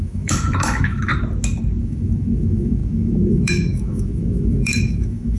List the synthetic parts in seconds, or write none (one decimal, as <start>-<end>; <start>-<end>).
0.0-1.1; 1.8-5.4